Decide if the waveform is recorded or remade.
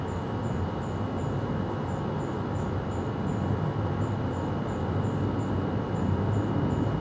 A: recorded